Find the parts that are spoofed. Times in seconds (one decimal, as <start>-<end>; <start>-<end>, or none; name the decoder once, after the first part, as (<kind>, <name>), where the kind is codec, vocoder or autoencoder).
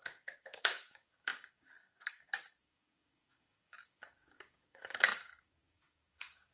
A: 0.0-6.5 (codec, DAC)